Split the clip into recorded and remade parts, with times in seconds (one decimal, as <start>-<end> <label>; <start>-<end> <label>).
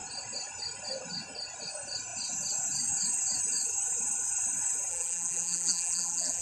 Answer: 0.0-4.9 recorded; 4.9-6.4 remade